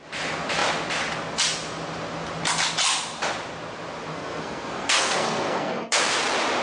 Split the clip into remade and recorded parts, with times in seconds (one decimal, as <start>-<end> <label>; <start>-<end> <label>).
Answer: 0.0-4.1 recorded; 4.1-6.0 remade; 6.0-6.6 recorded